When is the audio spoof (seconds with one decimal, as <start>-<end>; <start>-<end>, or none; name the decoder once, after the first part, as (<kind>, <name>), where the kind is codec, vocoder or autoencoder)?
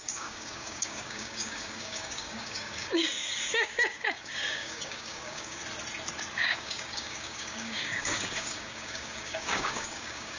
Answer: 0.0-5.6 (codec, DAC); 6.3-10.4